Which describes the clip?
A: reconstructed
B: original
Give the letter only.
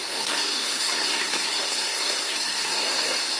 A